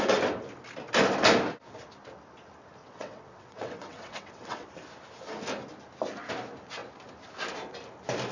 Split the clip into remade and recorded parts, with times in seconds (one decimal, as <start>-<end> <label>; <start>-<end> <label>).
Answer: 0.0-2.8 recorded; 2.8-4.7 remade; 4.7-8.3 recorded